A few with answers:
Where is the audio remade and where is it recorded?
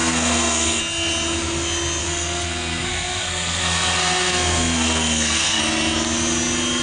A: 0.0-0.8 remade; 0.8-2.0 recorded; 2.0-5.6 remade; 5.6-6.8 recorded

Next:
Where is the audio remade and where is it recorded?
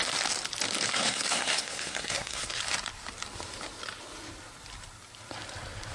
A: 0.0-0.9 recorded; 0.9-2.6 remade; 2.6-5.9 recorded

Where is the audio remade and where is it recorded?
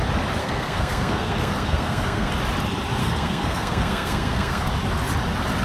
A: 0.0-0.4 recorded; 0.4-2.3 remade; 2.3-3.0 recorded; 3.0-4.7 remade; 4.7-5.6 recorded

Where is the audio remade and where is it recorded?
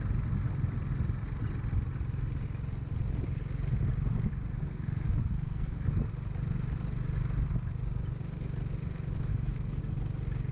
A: 0.0-4.5 recorded; 4.5-6.1 remade; 6.1-9.3 recorded; 9.3-9.8 remade; 9.8-10.5 recorded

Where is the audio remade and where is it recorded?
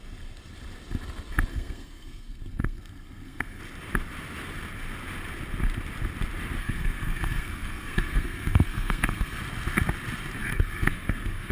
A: 0.0-1.5 recorded; 1.5-3.6 remade; 3.6-6.6 recorded; 6.6-9.4 remade; 9.4-10.4 recorded; 10.4-11.5 remade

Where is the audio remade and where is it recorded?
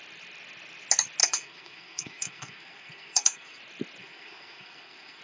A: 0.0-1.2 recorded; 1.2-3.6 remade; 3.6-4.0 recorded; 4.0-5.2 remade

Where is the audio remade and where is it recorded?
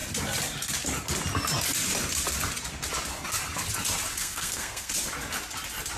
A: 0.0-4.2 recorded; 4.2-4.9 remade; 4.9-6.0 recorded